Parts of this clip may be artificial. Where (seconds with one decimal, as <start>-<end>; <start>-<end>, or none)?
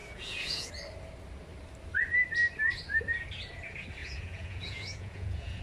0.0-0.7; 4.0-5.6